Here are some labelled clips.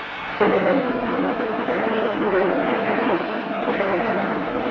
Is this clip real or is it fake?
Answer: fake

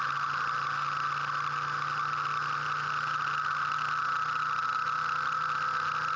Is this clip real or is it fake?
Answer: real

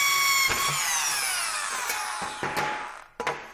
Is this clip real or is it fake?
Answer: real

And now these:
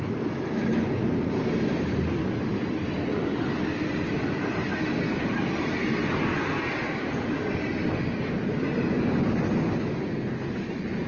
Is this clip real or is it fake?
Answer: real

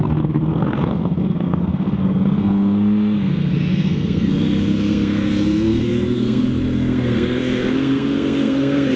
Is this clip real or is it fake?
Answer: fake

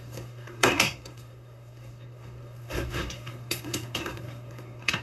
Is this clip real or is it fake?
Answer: fake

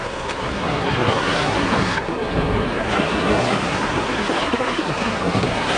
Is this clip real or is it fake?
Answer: fake